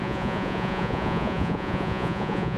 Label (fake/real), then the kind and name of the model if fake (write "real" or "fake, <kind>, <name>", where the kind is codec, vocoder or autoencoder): fake, vocoder, Vocos